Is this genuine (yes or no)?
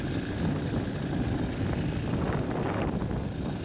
yes